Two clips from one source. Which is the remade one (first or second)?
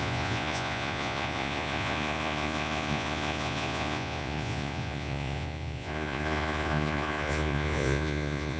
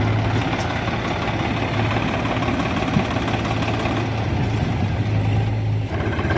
first